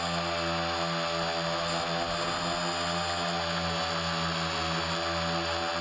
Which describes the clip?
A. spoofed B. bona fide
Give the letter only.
B